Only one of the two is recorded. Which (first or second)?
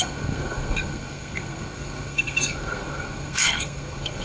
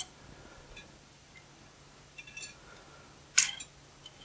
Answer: second